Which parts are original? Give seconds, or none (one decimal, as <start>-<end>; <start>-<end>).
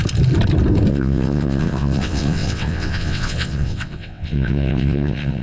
0.0-0.9